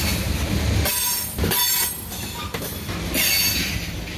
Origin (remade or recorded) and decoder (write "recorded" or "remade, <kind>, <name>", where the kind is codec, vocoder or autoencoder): recorded